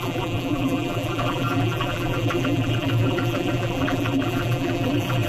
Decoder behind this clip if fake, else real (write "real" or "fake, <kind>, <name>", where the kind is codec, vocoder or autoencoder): fake, vocoder, BigVGAN v2